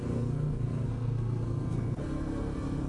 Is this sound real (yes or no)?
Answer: no